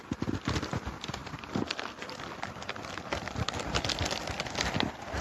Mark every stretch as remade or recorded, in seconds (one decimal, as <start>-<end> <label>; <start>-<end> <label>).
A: 0.0-5.2 recorded